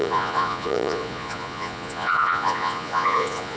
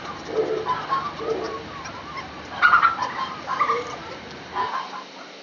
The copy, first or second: first